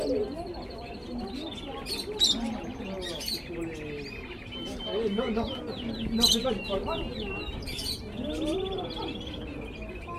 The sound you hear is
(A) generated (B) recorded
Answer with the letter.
B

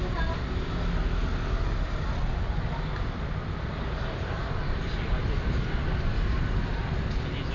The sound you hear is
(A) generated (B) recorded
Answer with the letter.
B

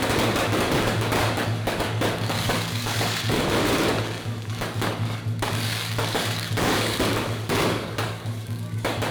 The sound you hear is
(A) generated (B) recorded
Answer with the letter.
A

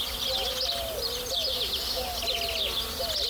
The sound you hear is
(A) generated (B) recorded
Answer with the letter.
B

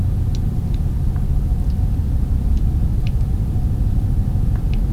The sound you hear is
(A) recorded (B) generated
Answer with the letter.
A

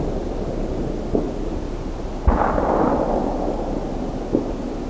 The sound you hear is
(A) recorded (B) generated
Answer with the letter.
A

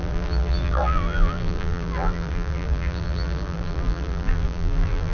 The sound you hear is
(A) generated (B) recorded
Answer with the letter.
A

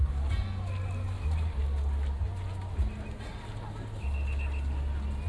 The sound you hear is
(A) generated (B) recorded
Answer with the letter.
B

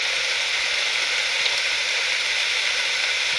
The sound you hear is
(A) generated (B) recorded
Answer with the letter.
B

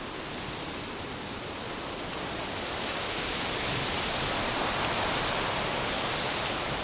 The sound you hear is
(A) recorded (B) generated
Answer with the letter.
A